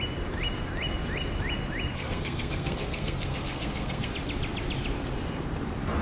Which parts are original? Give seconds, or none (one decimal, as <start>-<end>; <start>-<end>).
0.0-1.9; 4.1-6.0